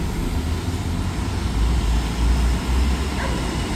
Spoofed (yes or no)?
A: no